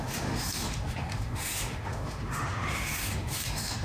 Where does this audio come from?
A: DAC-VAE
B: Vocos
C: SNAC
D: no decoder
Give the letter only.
A